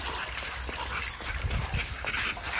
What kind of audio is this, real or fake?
real